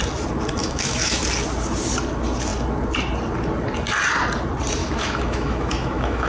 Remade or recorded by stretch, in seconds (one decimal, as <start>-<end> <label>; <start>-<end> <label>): 0.0-0.6 recorded; 0.6-1.2 remade; 1.2-4.8 recorded; 4.8-6.3 remade